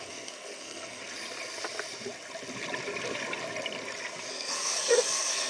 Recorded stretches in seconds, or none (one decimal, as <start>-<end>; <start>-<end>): 1.0-4.3